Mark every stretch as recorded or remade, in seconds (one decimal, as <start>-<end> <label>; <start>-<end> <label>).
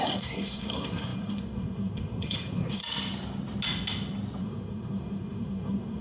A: 0.0-2.8 remade; 2.8-4.4 recorded; 4.4-6.0 remade